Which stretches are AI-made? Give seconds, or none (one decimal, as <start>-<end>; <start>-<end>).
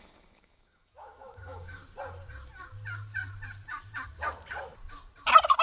0.0-1.8